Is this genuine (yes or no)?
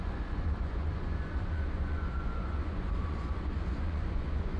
no